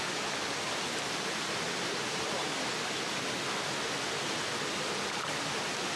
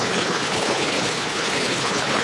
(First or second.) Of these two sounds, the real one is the first